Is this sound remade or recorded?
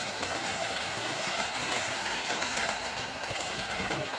remade